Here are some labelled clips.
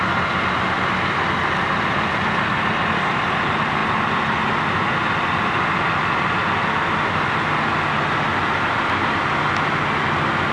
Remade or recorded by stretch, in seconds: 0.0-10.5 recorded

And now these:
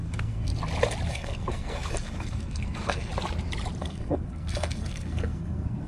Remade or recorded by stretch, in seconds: 0.0-0.5 remade; 0.5-1.1 recorded; 1.1-3.1 remade; 3.1-3.8 recorded; 3.8-5.9 remade

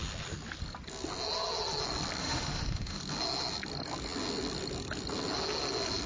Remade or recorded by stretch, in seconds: 0.0-2.2 recorded; 2.2-3.0 remade; 3.0-6.1 recorded

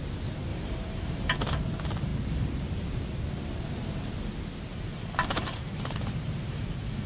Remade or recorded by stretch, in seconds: 0.0-0.5 recorded; 0.5-1.3 remade; 1.3-4.7 recorded; 4.7-7.1 remade

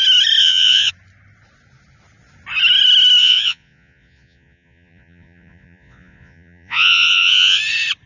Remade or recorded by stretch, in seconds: 0.0-0.4 recorded; 0.4-0.9 remade; 0.9-3.2 recorded; 3.2-7.6 remade; 7.6-8.1 recorded